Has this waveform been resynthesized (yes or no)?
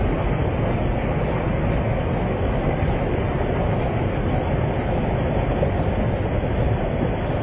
no